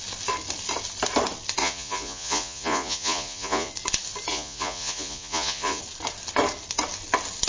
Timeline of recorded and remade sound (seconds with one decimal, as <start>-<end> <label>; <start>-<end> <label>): 0.0-1.6 recorded; 1.6-3.7 remade; 3.7-4.3 recorded; 4.3-5.8 remade; 5.8-7.5 recorded